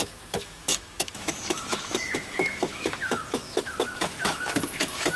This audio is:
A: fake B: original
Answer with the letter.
A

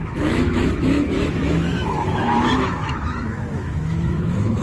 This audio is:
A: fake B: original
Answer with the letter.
A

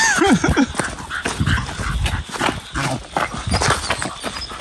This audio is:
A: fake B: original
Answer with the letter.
B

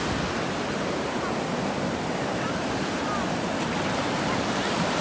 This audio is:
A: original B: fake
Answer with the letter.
A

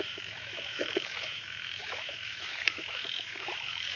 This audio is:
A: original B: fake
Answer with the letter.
B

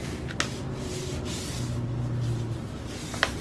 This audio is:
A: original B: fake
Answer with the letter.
A